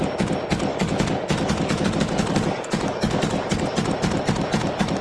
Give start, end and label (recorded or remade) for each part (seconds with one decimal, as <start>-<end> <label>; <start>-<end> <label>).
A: 0.0-0.7 recorded; 0.7-3.7 remade; 3.7-5.0 recorded